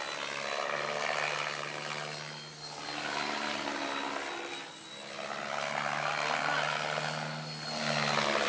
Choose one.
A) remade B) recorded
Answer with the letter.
B